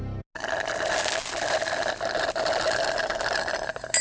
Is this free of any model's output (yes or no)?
yes